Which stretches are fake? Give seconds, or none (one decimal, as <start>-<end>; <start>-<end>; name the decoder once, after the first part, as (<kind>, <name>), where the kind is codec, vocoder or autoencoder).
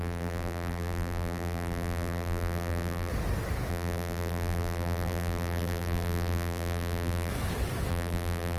0.0-3.1 (vocoder, BigVGAN v2); 3.7-7.3; 7.9-8.6